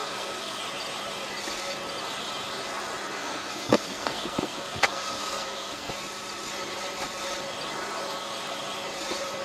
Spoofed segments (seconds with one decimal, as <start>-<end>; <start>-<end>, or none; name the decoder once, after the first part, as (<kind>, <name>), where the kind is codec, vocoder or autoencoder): 0.0-0.6 (codec, SNAC); 3.2-5.9